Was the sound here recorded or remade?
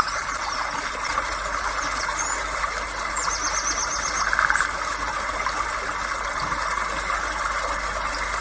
recorded